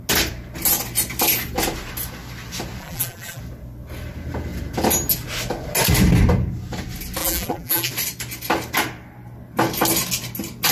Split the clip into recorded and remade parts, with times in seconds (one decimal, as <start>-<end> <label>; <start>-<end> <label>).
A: 0.0-2.8 recorded; 2.8-3.4 remade; 3.4-7.2 recorded; 7.2-7.9 remade; 7.9-10.7 recorded